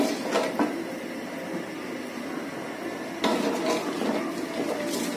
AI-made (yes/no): no